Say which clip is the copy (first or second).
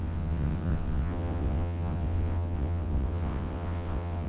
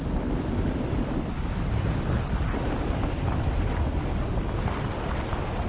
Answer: first